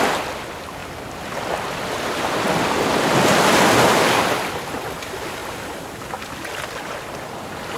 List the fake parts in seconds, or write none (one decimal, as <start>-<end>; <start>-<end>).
none